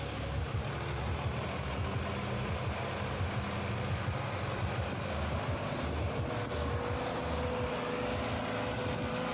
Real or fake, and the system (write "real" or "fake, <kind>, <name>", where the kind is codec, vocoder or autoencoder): real